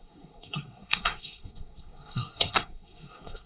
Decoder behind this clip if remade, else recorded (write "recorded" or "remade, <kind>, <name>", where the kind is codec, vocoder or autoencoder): remade, codec, SNAC